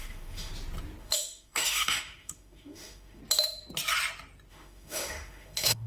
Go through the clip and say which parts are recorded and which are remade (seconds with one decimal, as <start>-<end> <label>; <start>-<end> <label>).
0.0-0.5 remade; 0.5-1.0 recorded; 1.0-3.2 remade; 3.2-4.5 recorded; 4.5-5.9 remade